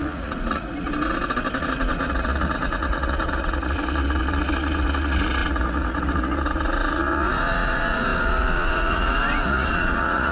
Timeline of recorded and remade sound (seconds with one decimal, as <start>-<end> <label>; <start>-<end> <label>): 0.0-0.9 remade; 0.9-1.6 recorded; 1.6-10.3 remade